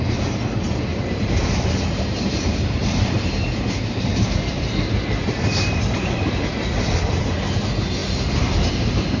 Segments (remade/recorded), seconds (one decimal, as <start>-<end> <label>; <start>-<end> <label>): 0.0-0.9 recorded; 0.9-4.2 remade; 4.2-5.2 recorded; 5.2-7.3 remade; 7.3-9.2 recorded